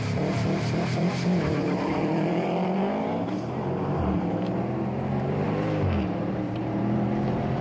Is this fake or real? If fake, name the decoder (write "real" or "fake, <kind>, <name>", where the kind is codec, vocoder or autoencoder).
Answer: fake, vocoder, BigVGAN v2